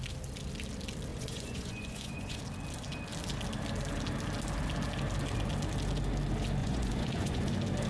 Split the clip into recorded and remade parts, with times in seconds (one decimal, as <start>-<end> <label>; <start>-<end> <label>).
0.0-1.1 recorded; 1.1-2.4 remade; 2.4-6.6 recorded; 6.6-7.5 remade; 7.5-7.9 recorded